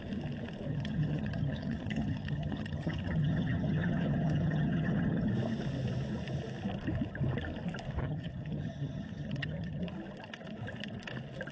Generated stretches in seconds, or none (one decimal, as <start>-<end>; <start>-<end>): 0.7-5.3; 8.0-9.8